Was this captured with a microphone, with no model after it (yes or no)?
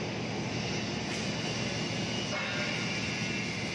yes